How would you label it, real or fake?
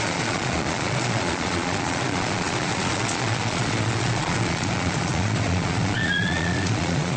fake